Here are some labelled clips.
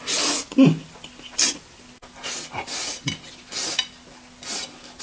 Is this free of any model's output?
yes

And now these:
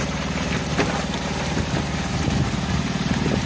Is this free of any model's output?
yes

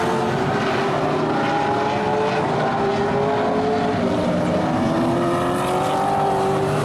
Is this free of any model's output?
yes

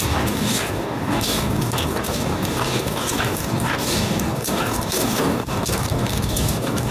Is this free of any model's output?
no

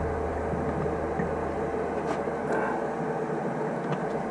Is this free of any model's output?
yes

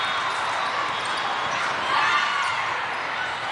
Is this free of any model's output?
yes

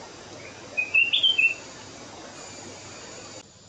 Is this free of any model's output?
yes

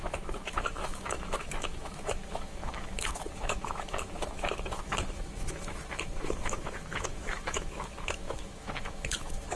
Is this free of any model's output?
no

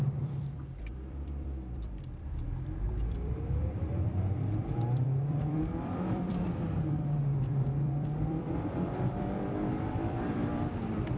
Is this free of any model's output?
no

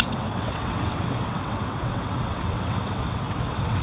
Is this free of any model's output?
no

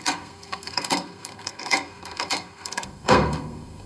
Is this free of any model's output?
no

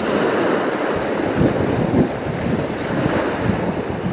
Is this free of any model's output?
yes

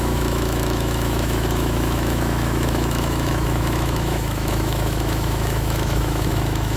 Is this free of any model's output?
no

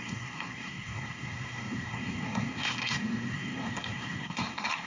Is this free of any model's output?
no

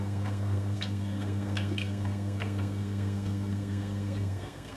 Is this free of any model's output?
no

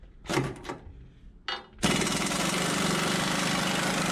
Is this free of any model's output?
yes